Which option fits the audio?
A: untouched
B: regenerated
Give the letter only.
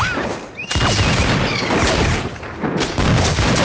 A